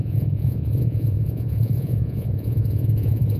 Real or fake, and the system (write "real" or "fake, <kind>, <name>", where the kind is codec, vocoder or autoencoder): fake, vocoder, Vocos